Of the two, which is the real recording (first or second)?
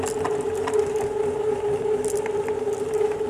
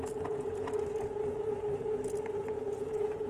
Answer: first